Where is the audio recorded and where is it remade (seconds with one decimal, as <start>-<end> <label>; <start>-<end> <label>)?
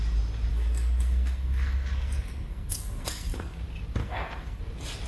0.0-0.5 recorded; 0.5-3.6 remade; 3.6-4.0 recorded; 4.0-4.6 remade; 4.6-5.1 recorded